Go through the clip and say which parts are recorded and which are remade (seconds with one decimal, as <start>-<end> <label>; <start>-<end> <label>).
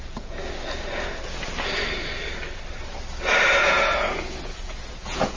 0.0-0.4 remade; 0.4-3.6 recorded; 3.6-5.4 remade